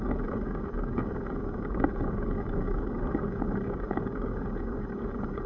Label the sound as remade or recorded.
remade